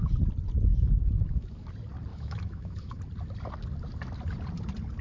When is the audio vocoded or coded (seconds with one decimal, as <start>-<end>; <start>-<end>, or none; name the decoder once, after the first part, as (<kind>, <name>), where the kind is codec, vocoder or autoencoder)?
0.7-1.7 (autoencoder, DAC-VAE); 2.1-3.0